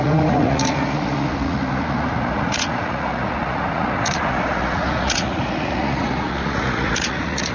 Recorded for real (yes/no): no